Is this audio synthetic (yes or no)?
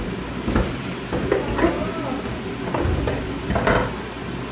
no